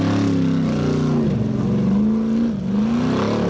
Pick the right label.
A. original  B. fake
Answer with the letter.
A